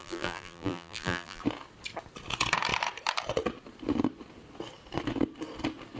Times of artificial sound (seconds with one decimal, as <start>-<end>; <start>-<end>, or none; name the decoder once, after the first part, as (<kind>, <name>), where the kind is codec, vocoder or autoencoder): 0.0-1.4 (vocoder, BigVGAN v2)